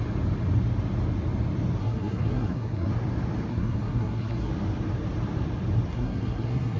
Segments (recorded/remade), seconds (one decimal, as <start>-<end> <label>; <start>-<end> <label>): 0.0-1.8 recorded; 1.8-2.9 remade; 2.9-3.5 recorded; 3.5-4.5 remade; 4.5-5.9 recorded; 5.9-6.8 remade